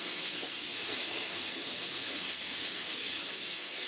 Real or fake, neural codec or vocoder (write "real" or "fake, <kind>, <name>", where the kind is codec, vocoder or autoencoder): fake, codec, SNAC